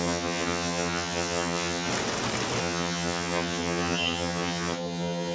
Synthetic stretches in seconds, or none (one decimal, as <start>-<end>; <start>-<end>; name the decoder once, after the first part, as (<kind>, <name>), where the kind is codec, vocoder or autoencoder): 0.0-1.9 (vocoder, HiFi-GAN); 2.6-5.3